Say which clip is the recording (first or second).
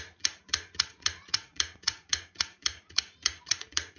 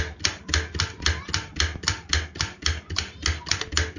second